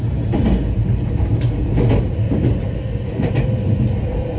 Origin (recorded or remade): recorded